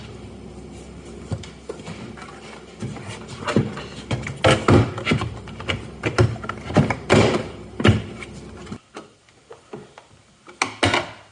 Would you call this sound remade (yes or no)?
no